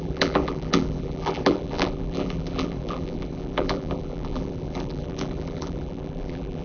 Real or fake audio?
fake